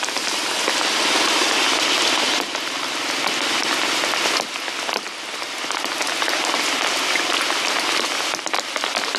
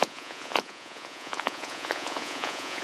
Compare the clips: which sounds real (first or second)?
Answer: first